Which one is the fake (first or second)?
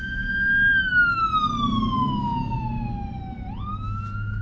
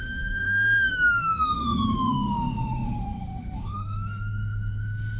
second